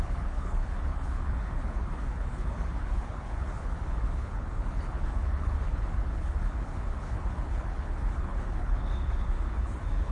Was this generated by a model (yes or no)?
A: yes